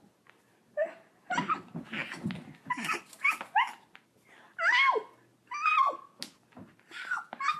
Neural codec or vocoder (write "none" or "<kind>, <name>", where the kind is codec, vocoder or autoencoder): none